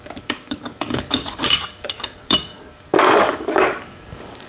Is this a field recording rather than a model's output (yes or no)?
no